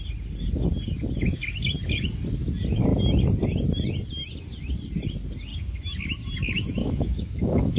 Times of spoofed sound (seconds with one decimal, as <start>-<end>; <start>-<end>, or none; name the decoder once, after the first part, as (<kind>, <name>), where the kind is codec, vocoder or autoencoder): 6.8-7.8 (autoencoder, DAC-VAE)